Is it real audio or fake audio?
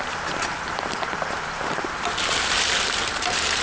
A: fake